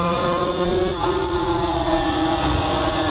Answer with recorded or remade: remade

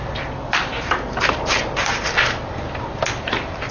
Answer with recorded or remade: recorded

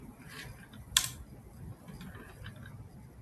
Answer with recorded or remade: recorded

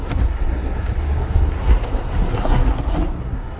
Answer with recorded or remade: remade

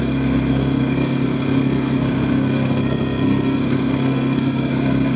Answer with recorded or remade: remade